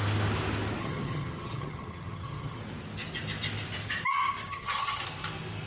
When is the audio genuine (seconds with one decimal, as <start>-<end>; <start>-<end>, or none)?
0.0-0.8; 2.6-4.5; 5.0-5.7